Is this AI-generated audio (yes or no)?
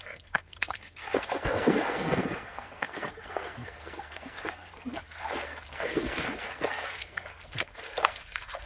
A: yes